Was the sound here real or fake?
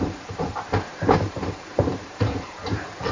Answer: fake